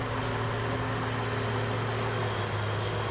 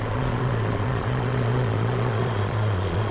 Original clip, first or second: first